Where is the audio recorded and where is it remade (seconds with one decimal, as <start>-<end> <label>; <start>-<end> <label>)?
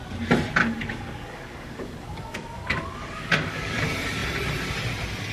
0.0-0.6 recorded; 0.6-3.8 remade; 3.8-5.3 recorded